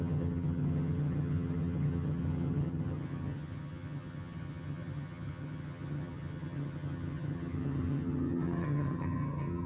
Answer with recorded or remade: remade